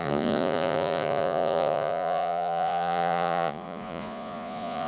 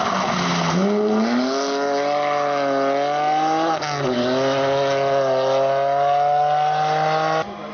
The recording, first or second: second